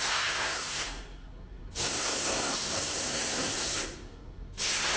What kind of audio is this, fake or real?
fake